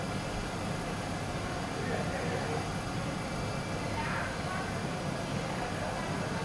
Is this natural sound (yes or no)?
yes